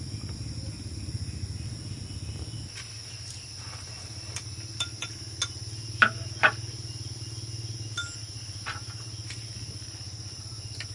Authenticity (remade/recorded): recorded